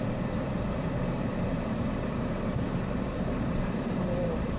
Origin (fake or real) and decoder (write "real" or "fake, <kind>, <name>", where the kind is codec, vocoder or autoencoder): fake, vocoder, BigVGAN v2